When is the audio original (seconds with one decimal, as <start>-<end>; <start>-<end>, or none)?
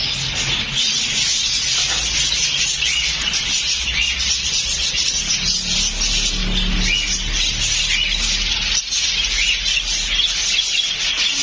0.0-11.4